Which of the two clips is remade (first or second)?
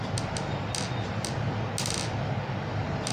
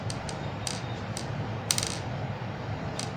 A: second